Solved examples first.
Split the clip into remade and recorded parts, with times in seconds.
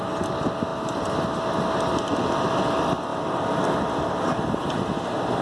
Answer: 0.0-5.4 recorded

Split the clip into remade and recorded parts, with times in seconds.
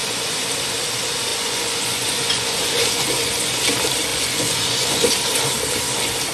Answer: 0.0-0.5 remade; 0.5-1.3 recorded; 1.3-3.6 remade; 3.6-4.1 recorded; 4.1-5.1 remade; 5.1-6.3 recorded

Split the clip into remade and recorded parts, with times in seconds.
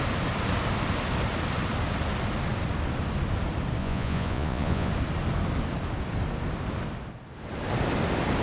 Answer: 0.0-3.8 recorded; 3.8-4.9 remade; 4.9-8.4 recorded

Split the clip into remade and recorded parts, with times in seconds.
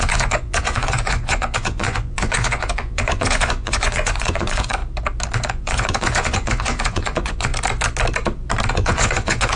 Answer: 0.0-4.8 remade; 4.8-5.5 recorded; 5.5-7.5 remade; 7.5-8.7 recorded; 8.7-9.6 remade